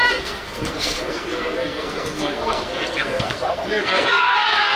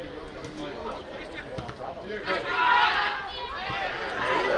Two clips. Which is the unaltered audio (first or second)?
second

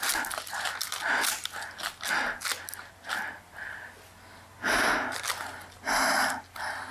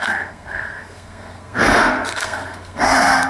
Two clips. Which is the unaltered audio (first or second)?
first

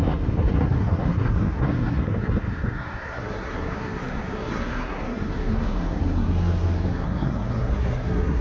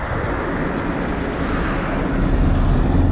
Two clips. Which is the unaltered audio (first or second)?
second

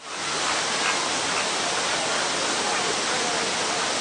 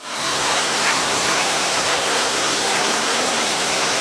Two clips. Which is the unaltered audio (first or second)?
first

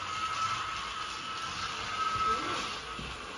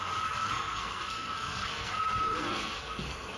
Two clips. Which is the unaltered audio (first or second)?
first